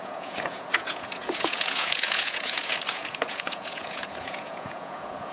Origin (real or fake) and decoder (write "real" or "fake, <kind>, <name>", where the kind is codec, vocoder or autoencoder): fake, vocoder, Vocos